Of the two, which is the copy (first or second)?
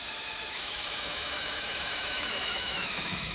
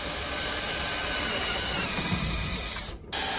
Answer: first